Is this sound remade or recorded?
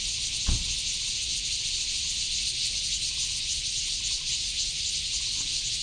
recorded